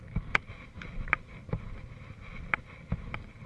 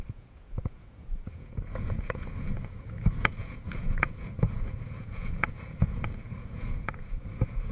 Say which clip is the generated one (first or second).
second